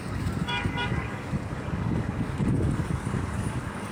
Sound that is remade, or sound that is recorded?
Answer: remade